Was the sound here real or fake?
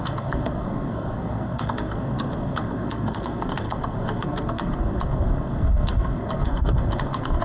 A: fake